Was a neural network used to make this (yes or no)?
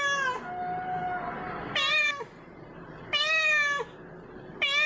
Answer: no